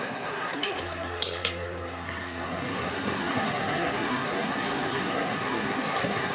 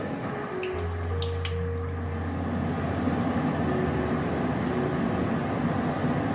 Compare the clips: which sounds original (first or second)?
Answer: second